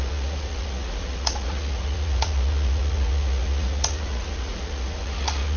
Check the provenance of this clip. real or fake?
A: fake